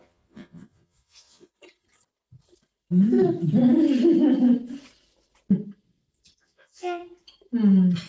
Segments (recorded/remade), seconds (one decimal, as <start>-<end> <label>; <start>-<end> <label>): 0.0-1.5 remade; 1.5-6.4 recorded; 6.4-7.0 remade; 7.0-8.1 recorded